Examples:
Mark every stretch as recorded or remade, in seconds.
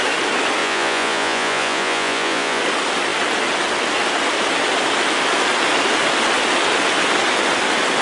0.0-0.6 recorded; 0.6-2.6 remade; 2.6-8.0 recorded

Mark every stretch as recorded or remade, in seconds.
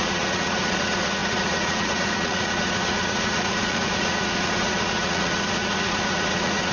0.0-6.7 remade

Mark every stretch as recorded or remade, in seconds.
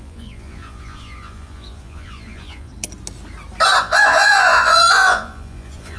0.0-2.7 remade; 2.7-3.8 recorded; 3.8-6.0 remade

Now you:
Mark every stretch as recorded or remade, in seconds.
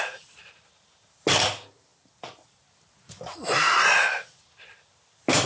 0.0-5.5 recorded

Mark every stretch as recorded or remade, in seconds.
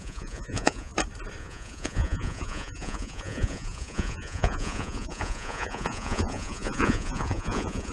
0.0-0.9 remade; 0.9-1.4 recorded; 1.4-7.9 remade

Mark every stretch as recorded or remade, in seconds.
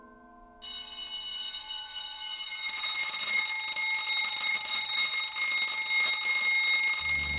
0.0-1.3 recorded; 1.3-3.4 remade; 3.4-4.2 recorded; 4.2-5.1 remade; 5.1-7.4 recorded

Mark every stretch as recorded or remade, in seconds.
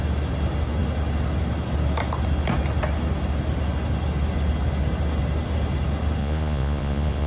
0.0-6.2 recorded; 6.2-7.3 remade